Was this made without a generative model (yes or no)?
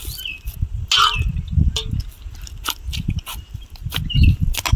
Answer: yes